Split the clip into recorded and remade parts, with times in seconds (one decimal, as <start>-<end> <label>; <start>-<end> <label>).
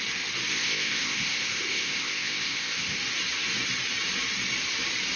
0.0-0.5 recorded; 0.5-3.0 remade; 3.0-5.2 recorded